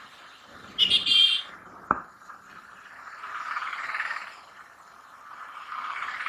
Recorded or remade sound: remade